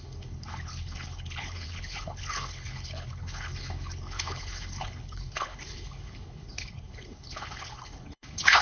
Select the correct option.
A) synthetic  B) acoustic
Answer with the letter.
A